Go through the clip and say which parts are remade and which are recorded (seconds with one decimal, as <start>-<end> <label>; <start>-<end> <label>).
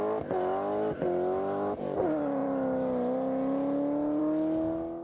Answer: 0.0-5.0 recorded